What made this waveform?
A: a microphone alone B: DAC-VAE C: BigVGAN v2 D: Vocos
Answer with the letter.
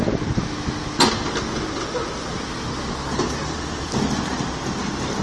A